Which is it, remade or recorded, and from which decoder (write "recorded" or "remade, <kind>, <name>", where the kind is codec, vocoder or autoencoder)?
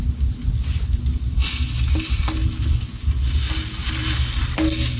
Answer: recorded